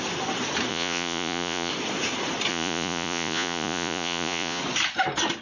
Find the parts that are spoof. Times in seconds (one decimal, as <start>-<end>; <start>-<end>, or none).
0.7-1.7; 2.5-4.6